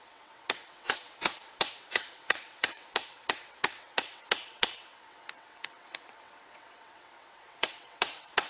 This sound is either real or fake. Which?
fake